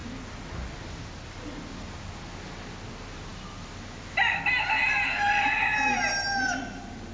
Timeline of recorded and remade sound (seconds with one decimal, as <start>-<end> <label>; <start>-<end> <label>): 0.0-7.1 recorded